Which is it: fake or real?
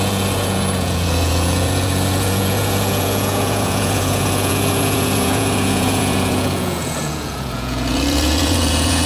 fake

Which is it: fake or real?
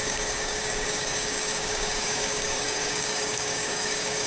fake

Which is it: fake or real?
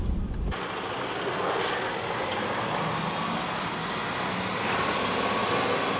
real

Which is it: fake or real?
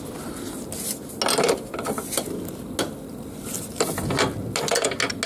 real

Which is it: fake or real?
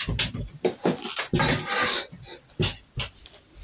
real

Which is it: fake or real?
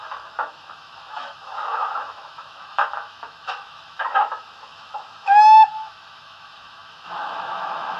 fake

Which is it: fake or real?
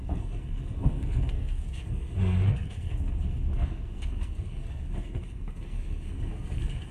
fake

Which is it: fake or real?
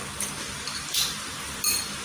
real